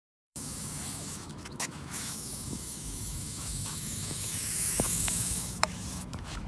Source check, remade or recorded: remade